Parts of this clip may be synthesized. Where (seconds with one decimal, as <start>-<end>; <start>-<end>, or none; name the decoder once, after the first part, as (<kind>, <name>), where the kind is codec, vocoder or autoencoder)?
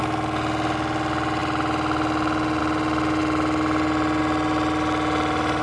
none